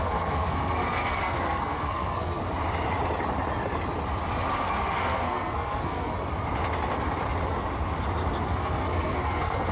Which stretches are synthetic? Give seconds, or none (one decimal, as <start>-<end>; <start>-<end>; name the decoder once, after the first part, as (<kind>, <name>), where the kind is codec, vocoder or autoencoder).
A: 0.0-2.4 (codec, SNAC); 4.5-6.1; 8.4-9.7